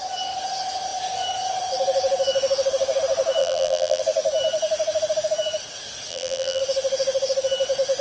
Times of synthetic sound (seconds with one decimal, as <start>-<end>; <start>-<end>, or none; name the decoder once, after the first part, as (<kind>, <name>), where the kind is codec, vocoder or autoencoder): 3.4-4.0 (vocoder, BigVGAN v2); 6.1-6.6